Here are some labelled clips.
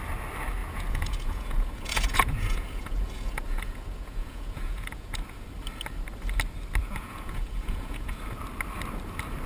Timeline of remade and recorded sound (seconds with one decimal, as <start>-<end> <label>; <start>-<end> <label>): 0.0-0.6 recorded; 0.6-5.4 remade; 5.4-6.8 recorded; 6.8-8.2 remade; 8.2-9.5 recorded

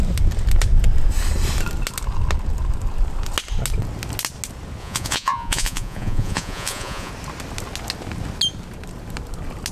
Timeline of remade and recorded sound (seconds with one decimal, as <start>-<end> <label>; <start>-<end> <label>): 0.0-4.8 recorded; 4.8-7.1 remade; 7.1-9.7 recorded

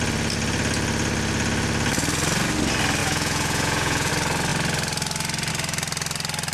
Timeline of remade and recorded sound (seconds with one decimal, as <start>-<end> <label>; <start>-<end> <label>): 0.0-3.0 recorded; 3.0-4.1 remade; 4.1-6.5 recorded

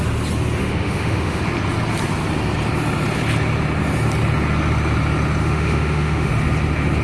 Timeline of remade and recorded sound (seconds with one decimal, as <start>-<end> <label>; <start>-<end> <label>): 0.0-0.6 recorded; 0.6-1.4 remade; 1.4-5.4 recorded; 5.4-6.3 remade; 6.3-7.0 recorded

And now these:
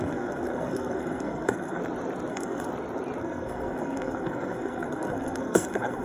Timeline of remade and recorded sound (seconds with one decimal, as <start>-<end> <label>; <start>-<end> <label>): 0.0-1.8 remade; 1.8-2.3 recorded; 2.3-2.7 remade; 2.7-3.2 recorded; 3.2-6.0 remade

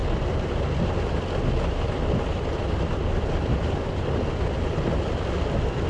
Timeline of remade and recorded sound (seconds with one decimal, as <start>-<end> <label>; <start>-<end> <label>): 0.0-1.6 recorded; 1.6-5.9 remade

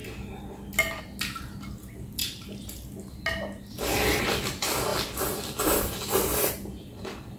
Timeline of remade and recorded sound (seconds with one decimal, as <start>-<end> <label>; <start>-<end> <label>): 0.0-7.4 recorded